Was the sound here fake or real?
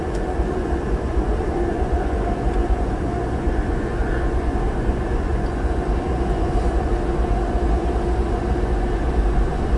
fake